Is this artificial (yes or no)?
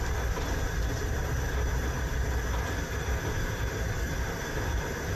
no